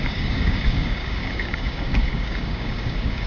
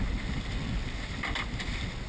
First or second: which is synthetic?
first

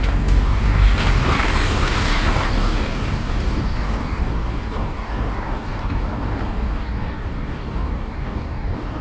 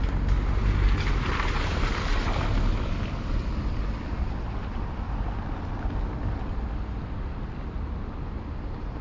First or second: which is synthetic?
first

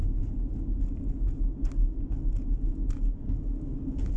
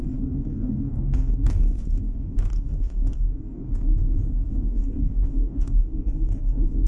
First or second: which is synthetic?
second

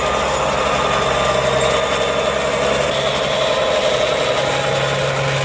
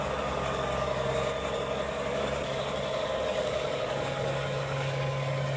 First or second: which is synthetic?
second